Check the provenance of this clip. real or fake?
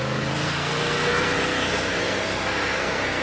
fake